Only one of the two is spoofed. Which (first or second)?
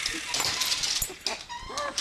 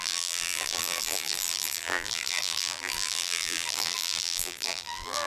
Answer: second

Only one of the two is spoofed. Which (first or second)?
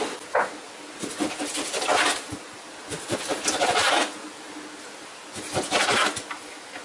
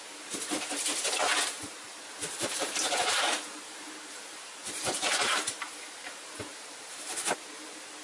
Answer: second